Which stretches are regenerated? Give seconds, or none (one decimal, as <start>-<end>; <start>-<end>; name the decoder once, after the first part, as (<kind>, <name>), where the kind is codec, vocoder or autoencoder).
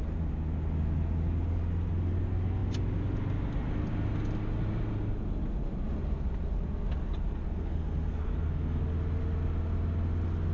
7.5-8.8 (codec, SNAC)